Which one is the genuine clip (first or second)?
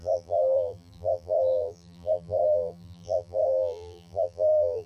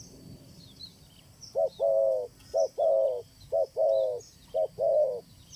second